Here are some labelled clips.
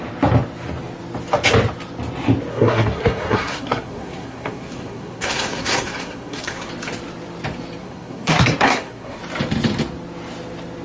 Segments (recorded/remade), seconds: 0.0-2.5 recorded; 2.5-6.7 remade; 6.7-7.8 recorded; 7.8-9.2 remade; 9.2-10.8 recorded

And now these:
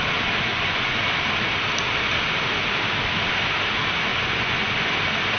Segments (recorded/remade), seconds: 0.0-0.5 recorded; 0.5-1.0 remade; 1.0-4.1 recorded; 4.1-4.9 remade; 4.9-5.4 recorded

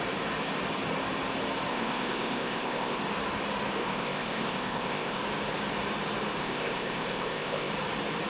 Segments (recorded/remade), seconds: 0.0-1.7 recorded; 1.7-3.0 remade; 3.0-3.8 recorded; 3.8-5.2 remade; 5.2-6.4 recorded; 6.4-7.7 remade; 7.7-8.3 recorded

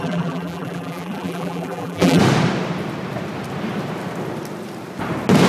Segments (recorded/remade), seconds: 0.0-2.2 remade; 2.2-5.5 recorded

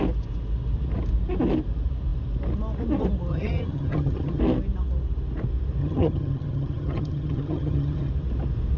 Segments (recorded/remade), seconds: 0.0-3.3 recorded; 3.3-4.4 remade; 4.4-5.8 recorded; 5.8-8.1 remade; 8.1-8.8 recorded